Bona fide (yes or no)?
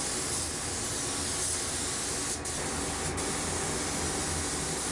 yes